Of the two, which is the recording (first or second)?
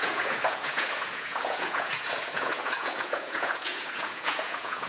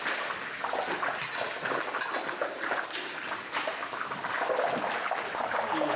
second